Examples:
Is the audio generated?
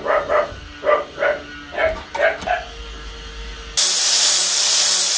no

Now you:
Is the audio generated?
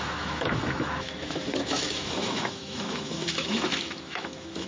yes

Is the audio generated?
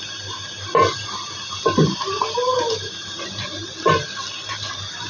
yes